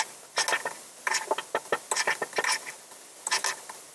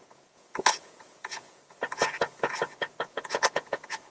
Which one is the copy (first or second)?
second